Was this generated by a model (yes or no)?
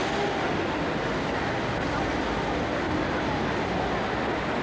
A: no